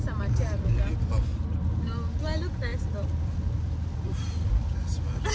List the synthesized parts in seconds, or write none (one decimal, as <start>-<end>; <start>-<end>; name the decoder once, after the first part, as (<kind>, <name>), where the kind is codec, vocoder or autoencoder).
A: none